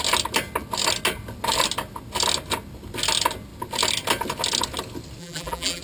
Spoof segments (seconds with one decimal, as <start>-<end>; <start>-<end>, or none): 5.2-5.8

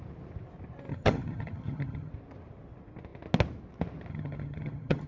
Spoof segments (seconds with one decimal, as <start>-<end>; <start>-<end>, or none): 0.9-2.1; 4.1-5.1

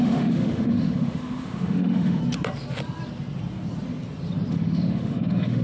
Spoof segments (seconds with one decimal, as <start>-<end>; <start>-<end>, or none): 0.0-2.2; 4.5-5.6

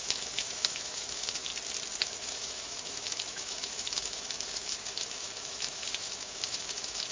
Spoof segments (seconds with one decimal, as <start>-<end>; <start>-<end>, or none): 0.0-1.5; 2.0-7.1

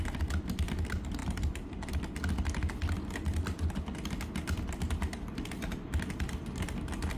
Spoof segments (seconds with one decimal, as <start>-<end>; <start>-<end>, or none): 1.2-4.1; 5.1-6.8

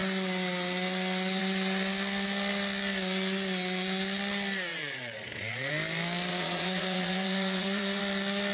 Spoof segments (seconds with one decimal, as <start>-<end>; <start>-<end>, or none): 4.7-5.7; 6.3-8.0